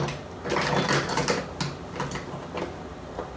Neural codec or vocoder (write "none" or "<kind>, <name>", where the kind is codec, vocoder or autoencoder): none